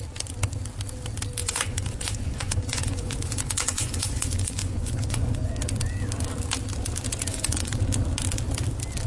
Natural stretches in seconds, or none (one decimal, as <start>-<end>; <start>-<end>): 0.0-1.4; 5.5-7.3; 7.8-9.1